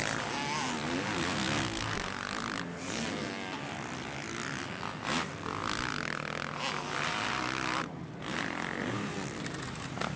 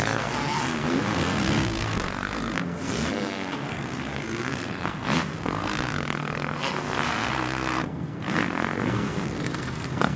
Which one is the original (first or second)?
first